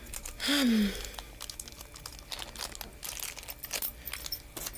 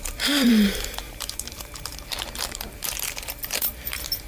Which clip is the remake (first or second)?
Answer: second